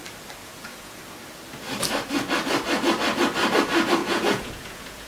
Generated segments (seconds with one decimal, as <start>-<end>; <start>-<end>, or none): 0.4-1.0; 4.0-5.1